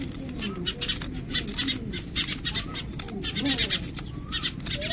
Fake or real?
real